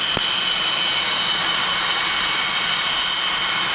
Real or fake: fake